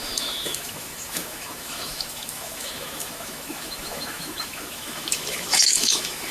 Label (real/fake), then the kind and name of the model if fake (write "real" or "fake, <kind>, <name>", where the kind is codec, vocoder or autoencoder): fake, autoencoder, DAC-VAE